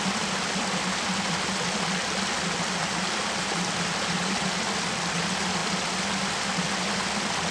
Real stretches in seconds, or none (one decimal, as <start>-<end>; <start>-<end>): 0.0-7.5